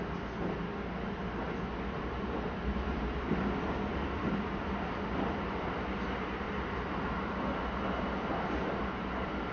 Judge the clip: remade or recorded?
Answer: recorded